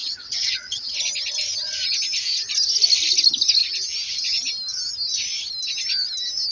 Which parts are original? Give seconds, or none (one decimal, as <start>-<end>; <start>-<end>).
0.9-6.5